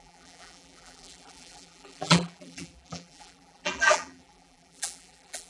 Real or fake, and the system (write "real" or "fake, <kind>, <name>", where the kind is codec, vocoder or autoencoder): fake, vocoder, BigVGAN v2